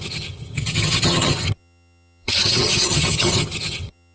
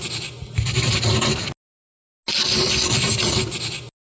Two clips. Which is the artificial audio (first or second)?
first